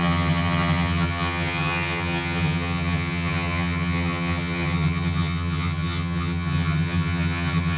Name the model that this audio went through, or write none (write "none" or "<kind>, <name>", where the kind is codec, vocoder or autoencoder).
vocoder, HiFi-GAN